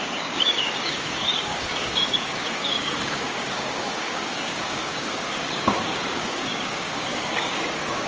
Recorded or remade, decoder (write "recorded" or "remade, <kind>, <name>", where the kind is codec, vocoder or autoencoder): remade, codec, DAC